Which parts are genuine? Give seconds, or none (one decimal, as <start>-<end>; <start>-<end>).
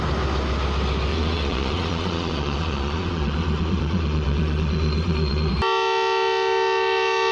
0.0-1.1; 5.5-7.3